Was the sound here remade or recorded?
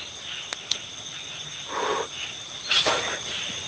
recorded